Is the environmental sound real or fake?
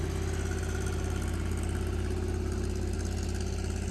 real